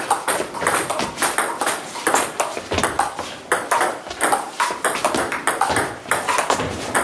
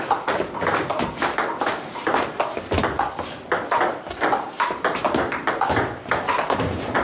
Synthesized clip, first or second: first